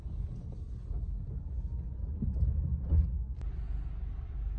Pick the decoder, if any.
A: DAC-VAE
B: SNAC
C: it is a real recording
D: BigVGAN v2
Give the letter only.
C